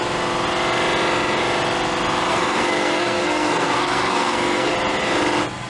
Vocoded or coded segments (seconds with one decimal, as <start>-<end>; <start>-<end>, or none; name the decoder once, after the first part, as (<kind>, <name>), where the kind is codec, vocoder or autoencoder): 2.3-4.7 (codec, SNAC)